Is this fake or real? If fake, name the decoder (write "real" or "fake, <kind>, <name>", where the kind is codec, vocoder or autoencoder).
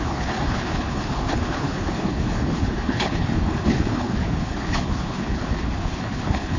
fake, codec, HILCodec